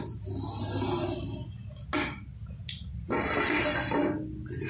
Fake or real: real